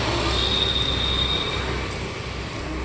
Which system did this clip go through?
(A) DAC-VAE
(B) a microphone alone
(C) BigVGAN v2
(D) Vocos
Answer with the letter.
B